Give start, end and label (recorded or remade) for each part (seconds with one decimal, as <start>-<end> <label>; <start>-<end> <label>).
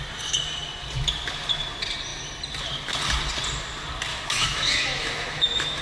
0.0-4.1 recorded; 4.1-5.8 remade